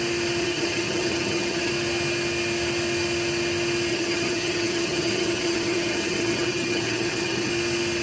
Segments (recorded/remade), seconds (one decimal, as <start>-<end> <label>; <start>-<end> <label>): 0.0-0.4 recorded; 0.4-1.7 remade; 1.7-3.9 recorded; 3.9-7.5 remade; 7.5-8.0 recorded